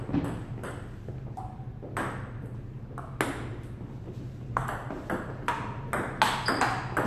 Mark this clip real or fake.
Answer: real